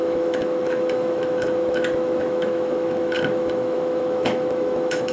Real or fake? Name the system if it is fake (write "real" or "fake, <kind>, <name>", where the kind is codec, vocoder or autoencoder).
fake, autoencoder, DAC-VAE